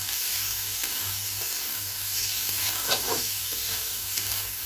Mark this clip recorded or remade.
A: remade